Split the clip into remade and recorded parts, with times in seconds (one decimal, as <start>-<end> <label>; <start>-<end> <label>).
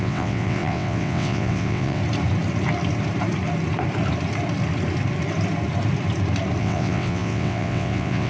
0.0-2.0 remade; 2.0-6.6 recorded; 6.6-8.3 remade